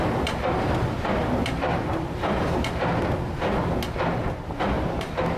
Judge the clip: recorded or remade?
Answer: recorded